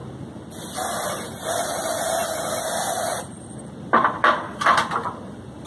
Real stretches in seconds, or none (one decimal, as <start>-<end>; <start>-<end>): 0.0-1.5